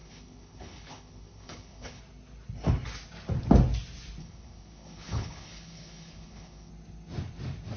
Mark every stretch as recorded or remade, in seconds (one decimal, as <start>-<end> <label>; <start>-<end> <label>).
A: 0.0-2.0 remade; 2.0-4.2 recorded; 4.2-6.7 remade; 6.7-7.8 recorded